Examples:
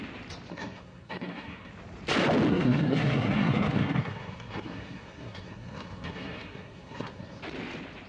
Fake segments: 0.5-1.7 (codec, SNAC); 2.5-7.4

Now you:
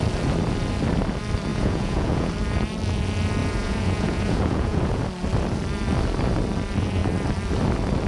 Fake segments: 1.5-2.3 (vocoder, Vocos); 3.4-5.0

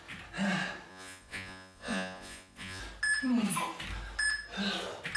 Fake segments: 0.9-2.8 (vocoder, Vocos)

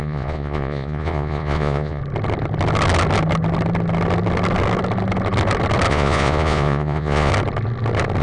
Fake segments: 0.0-2.0 (vocoder, Vocos); 5.9-7.3

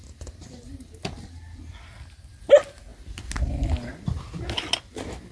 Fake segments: none